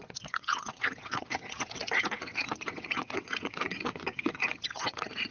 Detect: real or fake fake